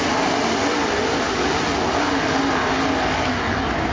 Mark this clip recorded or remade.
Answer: recorded